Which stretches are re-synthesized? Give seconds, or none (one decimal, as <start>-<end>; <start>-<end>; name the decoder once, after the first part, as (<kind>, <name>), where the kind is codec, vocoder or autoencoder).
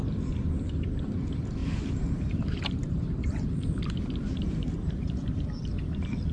1.6-5.4 (vocoder, BigVGAN v2)